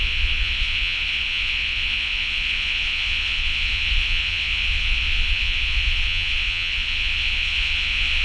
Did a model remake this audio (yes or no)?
yes